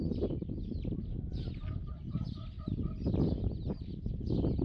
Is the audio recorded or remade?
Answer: recorded